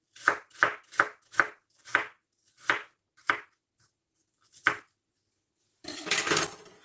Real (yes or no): yes